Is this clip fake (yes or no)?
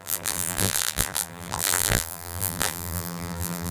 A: yes